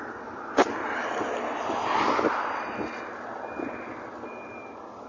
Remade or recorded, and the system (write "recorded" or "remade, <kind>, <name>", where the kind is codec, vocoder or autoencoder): recorded